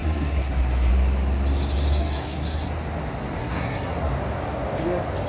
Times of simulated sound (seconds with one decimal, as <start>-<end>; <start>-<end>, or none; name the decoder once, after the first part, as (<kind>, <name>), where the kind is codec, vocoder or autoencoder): 0.0-0.9 (codec, SNAC); 2.0-2.7; 3.4-4.1

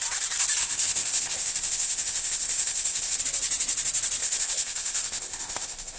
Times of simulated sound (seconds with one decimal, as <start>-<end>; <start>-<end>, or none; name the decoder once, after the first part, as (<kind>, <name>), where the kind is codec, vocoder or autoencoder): 0.6-3.2 (codec, ZipCodec); 4.2-6.0

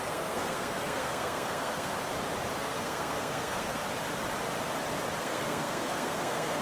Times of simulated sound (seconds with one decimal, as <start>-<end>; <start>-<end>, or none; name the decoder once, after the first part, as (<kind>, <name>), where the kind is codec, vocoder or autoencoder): 0.0-1.9 (codec, SNAC); 2.6-3.8; 5.2-6.6

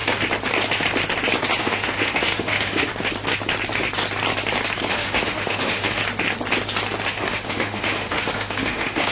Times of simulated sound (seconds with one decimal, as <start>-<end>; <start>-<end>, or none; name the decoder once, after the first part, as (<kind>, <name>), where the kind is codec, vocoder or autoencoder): 1.6-2.9 (autoencoder, DAC-VAE); 4.9-6.0; 7.1-9.1

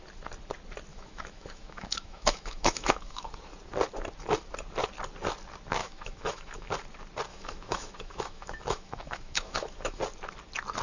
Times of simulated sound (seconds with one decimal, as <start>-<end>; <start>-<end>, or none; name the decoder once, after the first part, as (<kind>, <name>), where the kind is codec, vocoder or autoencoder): 0.9-3.3 (autoencoder, DAC-VAE); 5.8-6.7; 7.3-10.0